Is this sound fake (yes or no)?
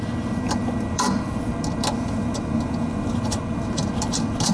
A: yes